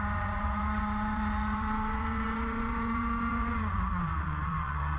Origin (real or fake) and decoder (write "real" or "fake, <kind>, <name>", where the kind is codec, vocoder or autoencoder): fake, vocoder, Vocos